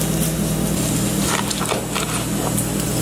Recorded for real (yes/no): yes